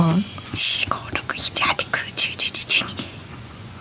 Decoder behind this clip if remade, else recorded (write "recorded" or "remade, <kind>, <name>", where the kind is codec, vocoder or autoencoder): remade, vocoder, Vocos